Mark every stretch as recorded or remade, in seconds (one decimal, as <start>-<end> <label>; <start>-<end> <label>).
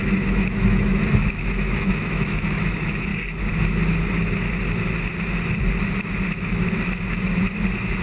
0.0-3.1 remade; 3.1-8.0 recorded